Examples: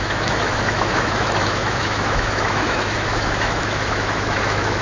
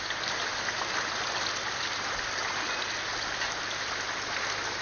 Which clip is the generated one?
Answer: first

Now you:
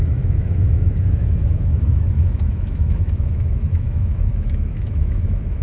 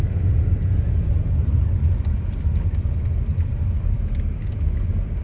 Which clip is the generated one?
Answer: first